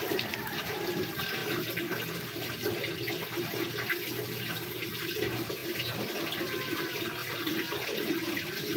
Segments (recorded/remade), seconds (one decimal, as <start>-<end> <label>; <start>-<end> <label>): 0.0-1.4 remade; 1.4-4.5 recorded; 4.5-5.6 remade; 5.6-6.7 recorded; 6.7-7.2 remade; 7.2-8.1 recorded; 8.1-8.8 remade